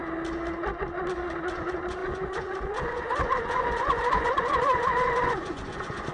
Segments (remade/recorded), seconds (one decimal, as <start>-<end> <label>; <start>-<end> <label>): 0.0-1.5 recorded; 1.5-6.1 remade